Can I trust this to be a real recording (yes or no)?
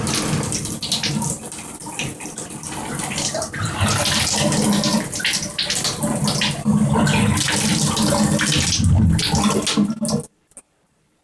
yes